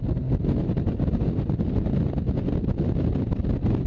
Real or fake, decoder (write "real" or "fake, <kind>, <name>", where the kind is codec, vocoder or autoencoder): real